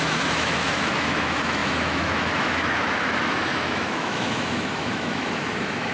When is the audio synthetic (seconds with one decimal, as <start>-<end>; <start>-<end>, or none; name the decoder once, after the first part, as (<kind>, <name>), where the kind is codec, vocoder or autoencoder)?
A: 0.0-5.9 (autoencoder, DAC-VAE)